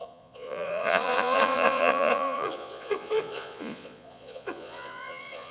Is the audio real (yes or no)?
no